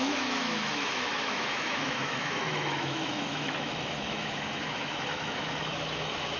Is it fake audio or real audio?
fake